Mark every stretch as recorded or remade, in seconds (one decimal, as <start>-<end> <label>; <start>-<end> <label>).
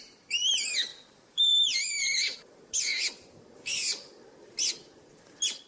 0.0-0.9 recorded; 0.9-2.4 remade; 2.4-5.7 recorded